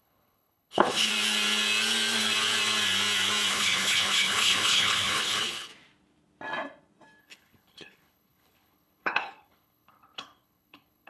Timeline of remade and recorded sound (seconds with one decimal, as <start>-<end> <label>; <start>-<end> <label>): 0.0-1.1 remade; 1.1-3.5 recorded; 3.5-5.7 remade; 5.7-7.2 recorded; 7.2-11.1 remade